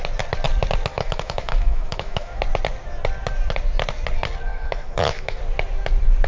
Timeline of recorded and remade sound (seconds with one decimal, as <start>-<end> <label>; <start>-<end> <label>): 0.0-0.9 recorded; 0.9-2.4 remade; 2.4-4.5 recorded; 4.5-5.4 remade; 5.4-6.3 recorded